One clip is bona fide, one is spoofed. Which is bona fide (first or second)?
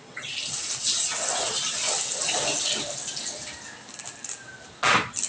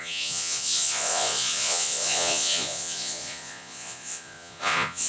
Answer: first